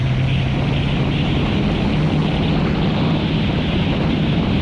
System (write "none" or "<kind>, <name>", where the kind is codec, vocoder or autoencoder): none